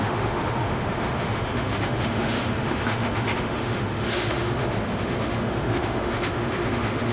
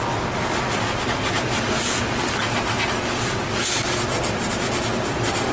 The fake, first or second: first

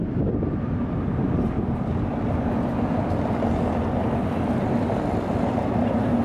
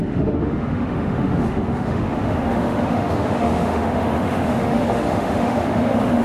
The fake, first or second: second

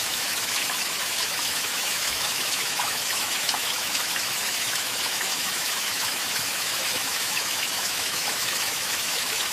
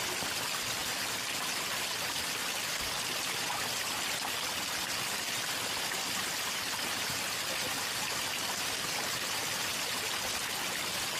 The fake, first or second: first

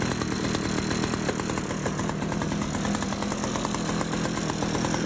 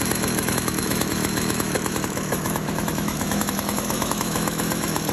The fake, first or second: second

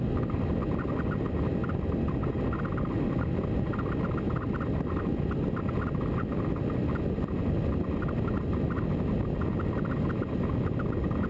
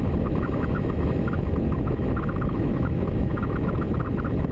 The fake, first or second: second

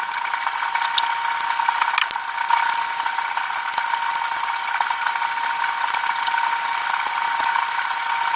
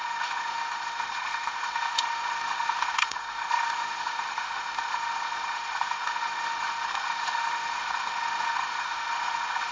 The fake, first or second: second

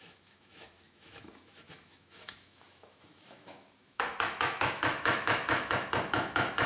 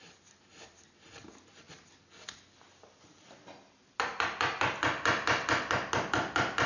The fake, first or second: first